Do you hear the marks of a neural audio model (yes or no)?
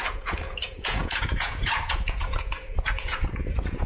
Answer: yes